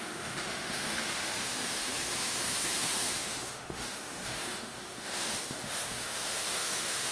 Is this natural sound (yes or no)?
no